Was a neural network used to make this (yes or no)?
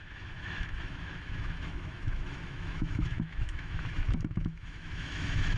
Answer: yes